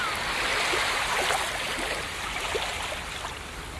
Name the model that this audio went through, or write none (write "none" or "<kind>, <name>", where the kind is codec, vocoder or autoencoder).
vocoder, BigVGAN v2